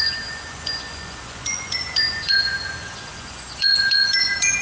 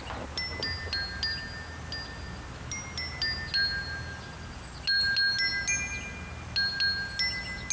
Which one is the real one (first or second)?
second